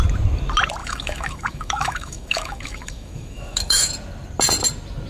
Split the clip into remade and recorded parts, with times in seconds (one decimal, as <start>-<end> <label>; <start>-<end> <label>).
0.0-0.8 recorded; 0.8-3.9 remade; 3.9-5.1 recorded